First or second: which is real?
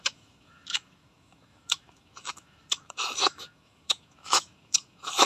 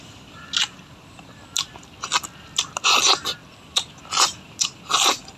second